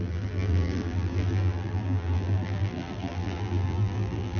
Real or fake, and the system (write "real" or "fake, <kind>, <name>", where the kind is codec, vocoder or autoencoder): fake, vocoder, BigVGAN v2